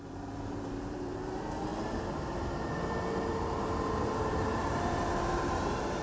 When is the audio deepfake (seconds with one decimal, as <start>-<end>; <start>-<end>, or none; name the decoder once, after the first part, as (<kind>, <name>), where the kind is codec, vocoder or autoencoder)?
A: 0.0-6.0 (vocoder, BigVGAN v2)